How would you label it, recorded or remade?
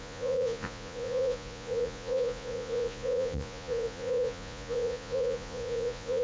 remade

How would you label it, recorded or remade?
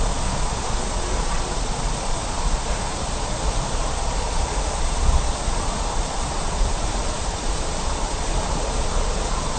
remade